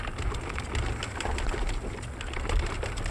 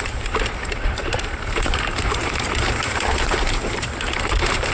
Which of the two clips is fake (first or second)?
second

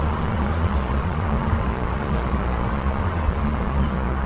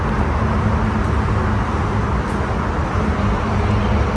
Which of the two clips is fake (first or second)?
first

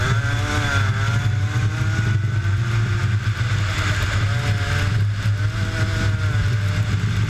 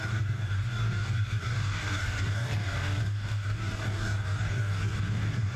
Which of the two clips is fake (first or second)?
second